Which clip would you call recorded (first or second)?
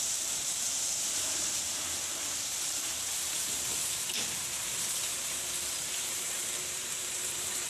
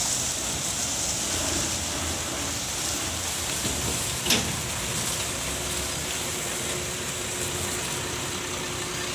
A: second